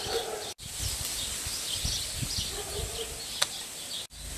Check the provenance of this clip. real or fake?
real